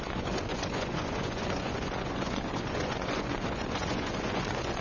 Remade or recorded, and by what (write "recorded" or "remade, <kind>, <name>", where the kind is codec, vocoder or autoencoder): remade, vocoder, Vocos